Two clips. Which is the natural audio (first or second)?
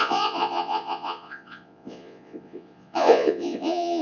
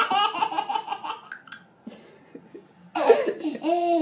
second